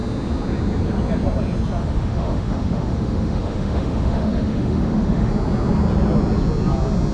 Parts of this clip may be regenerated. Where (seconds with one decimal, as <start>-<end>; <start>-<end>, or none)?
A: 1.8-5.3